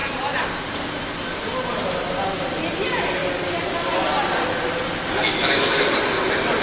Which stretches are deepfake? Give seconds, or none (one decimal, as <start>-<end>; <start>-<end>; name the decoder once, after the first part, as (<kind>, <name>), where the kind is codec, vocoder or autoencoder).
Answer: none